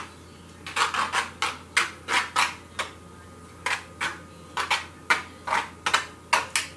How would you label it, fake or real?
real